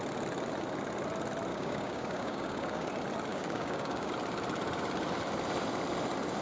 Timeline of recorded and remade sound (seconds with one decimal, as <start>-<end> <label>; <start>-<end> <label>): 0.0-1.5 recorded; 1.5-2.9 remade; 2.9-3.3 recorded; 3.3-4.1 remade; 4.1-6.4 recorded